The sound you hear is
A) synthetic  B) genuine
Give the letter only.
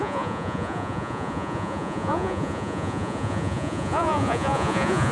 A